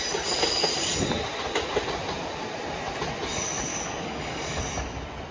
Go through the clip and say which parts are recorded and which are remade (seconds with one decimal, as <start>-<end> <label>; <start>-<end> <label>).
0.0-3.7 recorded; 3.7-4.6 remade; 4.6-5.3 recorded